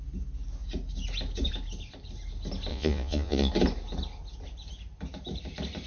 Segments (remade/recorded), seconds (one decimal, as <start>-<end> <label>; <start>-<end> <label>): 0.0-2.7 recorded; 2.7-3.5 remade; 3.5-5.9 recorded